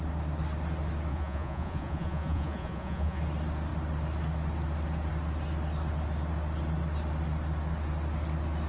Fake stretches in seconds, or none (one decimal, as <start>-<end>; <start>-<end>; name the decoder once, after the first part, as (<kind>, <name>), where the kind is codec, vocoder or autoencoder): 1.1-3.2 (vocoder, Vocos)